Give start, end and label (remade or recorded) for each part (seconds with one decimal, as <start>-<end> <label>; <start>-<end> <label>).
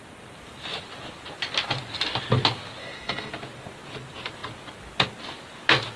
0.0-2.8 recorded; 2.8-3.3 remade; 3.3-6.0 recorded